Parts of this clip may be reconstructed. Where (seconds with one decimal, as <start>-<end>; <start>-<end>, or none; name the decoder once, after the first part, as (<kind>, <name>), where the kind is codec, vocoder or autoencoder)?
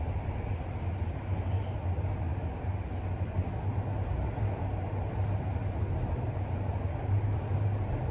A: none